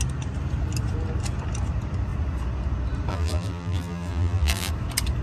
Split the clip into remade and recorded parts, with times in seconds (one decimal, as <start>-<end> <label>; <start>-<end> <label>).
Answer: 0.0-3.1 recorded; 3.1-4.7 remade; 4.7-5.2 recorded